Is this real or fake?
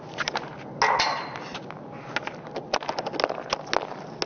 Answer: real